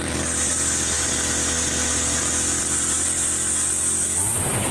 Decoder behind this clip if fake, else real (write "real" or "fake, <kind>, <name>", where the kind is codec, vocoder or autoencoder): real